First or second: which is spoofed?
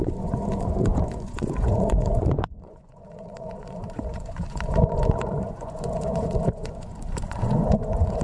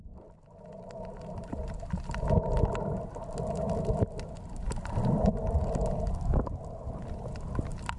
first